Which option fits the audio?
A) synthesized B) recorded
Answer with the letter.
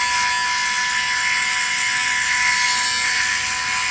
B